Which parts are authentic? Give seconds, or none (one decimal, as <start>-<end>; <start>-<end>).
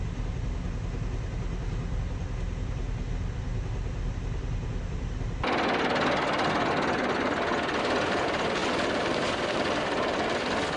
0.0-10.8